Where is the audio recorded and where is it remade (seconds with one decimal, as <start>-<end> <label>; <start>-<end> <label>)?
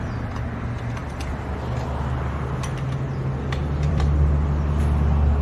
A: 0.0-3.6 recorded; 3.6-4.8 remade; 4.8-5.4 recorded